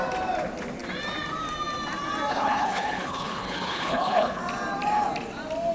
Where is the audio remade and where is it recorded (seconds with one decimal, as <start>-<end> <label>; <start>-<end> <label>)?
0.0-2.3 recorded; 2.3-4.4 remade; 4.4-5.7 recorded